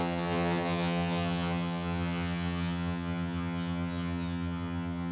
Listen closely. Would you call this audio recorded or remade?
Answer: remade